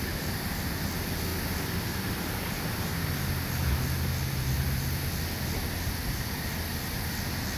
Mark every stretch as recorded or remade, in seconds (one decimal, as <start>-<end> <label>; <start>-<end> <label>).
0.0-7.6 recorded